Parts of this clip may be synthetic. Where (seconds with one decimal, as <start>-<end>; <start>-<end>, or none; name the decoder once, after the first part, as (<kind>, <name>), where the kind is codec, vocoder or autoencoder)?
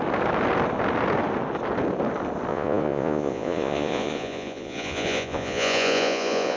2.5-6.6 (vocoder, Vocos)